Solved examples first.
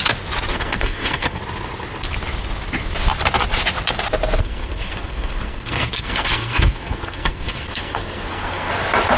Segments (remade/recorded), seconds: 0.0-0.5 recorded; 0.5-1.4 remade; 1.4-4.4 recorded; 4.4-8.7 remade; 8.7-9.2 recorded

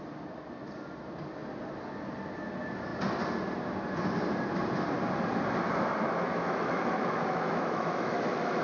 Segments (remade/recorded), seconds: 0.0-6.3 recorded; 6.3-8.6 remade

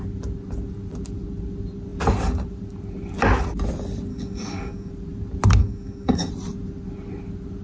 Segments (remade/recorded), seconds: 0.0-4.1 recorded; 4.1-4.9 remade; 4.9-5.6 recorded; 5.6-6.3 remade; 6.3-7.6 recorded

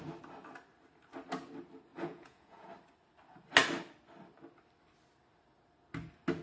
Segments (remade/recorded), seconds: 0.0-1.9 recorded; 1.9-2.7 remade; 2.7-6.4 recorded

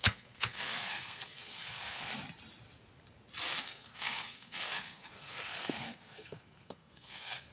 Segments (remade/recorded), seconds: 0.0-2.1 remade; 2.1-3.5 recorded; 3.5-7.5 remade

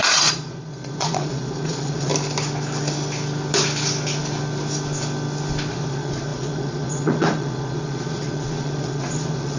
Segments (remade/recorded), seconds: 0.0-2.1 remade; 2.1-5.7 recorded; 5.7-9.6 remade

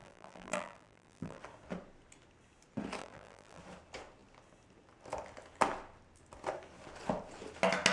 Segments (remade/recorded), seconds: 0.0-1.4 remade; 1.4-3.0 recorded; 3.0-3.6 remade; 3.6-7.9 recorded